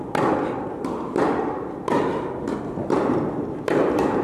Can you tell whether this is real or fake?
real